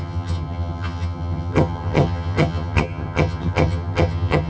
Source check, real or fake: fake